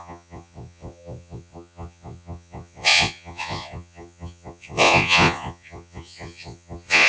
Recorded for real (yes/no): no